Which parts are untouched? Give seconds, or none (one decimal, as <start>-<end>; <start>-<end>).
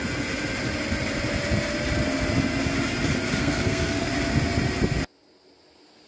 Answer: 0.0-3.4; 4.1-6.1